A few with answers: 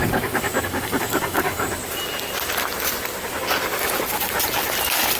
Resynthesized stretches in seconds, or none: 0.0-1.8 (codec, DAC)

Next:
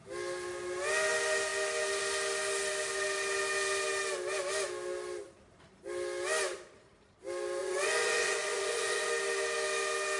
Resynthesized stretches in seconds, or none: 7.6-9.1 (vocoder, Vocos)

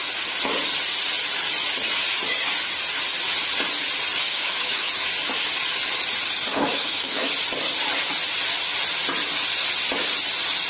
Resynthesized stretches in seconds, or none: 4.2-4.9 (autoencoder, DAC-VAE); 6.5-7.3

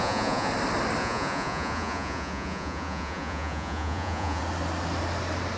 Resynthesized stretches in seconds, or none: 0.0-0.5 (vocoder, Vocos); 1.0-4.4

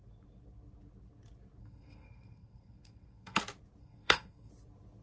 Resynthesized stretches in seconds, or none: 1.6-3.4 (codec, SNAC); 3.8-4.5

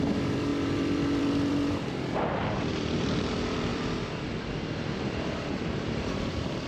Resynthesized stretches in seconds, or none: 0.0-6.7 (vocoder, BigVGAN v2)

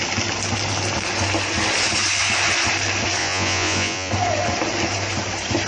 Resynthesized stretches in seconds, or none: 3.2-4.1 (vocoder, Vocos)

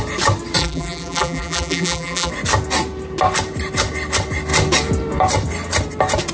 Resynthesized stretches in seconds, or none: 0.6-2.3 (vocoder, BigVGAN v2)